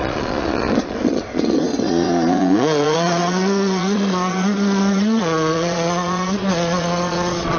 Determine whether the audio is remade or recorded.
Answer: remade